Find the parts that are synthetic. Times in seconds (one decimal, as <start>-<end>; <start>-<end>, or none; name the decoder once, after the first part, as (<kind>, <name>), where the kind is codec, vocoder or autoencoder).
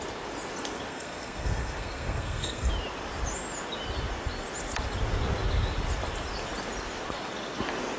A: 0.9-2.7 (codec, SNAC)